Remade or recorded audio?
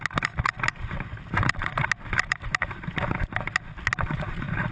recorded